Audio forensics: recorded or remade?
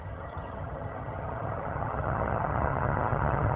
remade